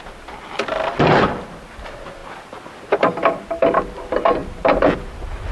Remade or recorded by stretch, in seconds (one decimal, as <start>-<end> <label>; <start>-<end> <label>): 0.0-5.5 recorded